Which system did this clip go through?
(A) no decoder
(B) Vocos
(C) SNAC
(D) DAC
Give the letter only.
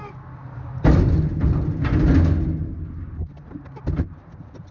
A